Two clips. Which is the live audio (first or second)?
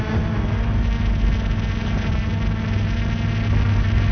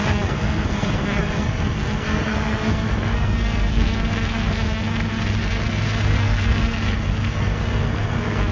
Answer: first